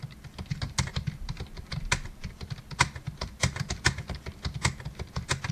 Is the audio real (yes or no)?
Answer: no